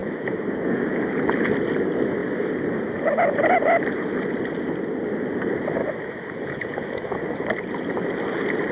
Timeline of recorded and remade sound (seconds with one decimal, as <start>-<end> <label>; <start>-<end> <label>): 0.0-1.1 remade; 1.1-5.8 recorded; 5.8-7.2 remade; 7.2-8.7 recorded